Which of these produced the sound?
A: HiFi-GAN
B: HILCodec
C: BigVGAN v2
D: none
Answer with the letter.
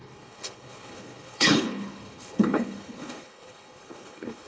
B